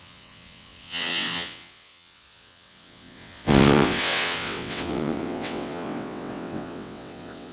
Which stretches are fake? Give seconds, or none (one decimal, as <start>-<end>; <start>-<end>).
0.0-7.5